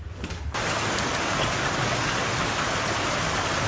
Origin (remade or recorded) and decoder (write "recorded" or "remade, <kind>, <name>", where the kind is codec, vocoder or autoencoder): recorded